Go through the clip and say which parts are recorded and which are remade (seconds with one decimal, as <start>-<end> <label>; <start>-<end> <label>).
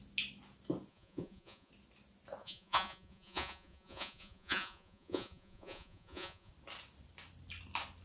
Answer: 0.0-0.9 recorded; 0.9-1.7 remade; 1.7-2.4 recorded; 2.4-6.5 remade; 6.5-8.0 recorded